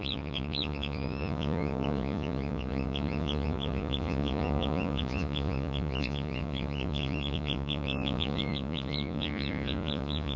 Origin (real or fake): fake